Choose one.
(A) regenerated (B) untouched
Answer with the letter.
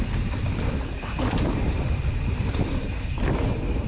B